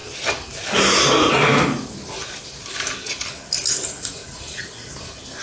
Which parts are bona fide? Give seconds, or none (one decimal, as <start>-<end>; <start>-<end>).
0.0-3.9; 4.9-5.4